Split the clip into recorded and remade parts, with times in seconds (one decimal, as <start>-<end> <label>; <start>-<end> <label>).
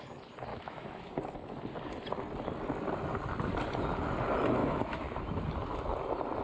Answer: 0.0-0.5 recorded; 0.5-1.1 remade; 1.1-4.6 recorded; 4.6-5.5 remade; 5.5-6.4 recorded